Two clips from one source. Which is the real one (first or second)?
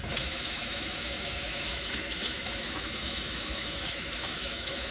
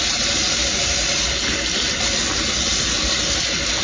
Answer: second